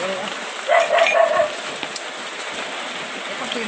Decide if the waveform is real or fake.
real